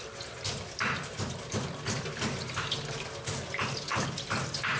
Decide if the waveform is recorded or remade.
recorded